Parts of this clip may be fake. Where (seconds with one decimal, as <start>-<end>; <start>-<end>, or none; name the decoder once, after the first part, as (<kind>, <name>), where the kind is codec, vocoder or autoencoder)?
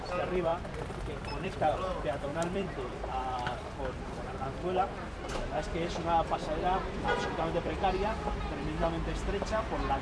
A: 0.5-1.5 (vocoder, BigVGAN v2); 2.3-3.6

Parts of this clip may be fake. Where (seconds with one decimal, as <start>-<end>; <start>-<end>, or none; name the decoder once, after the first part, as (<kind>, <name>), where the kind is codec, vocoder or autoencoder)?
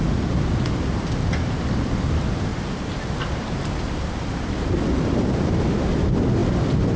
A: 2.5-4.8 (vocoder, BigVGAN v2)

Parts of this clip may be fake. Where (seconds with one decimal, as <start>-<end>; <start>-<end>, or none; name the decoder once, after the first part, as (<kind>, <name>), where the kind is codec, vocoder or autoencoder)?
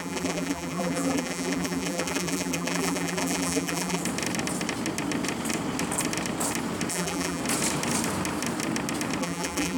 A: 0.0-4.0 (vocoder, BigVGAN v2); 6.9-7.4; 9.2-9.8